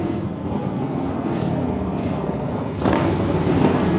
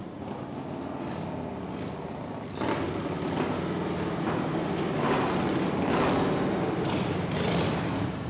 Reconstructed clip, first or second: first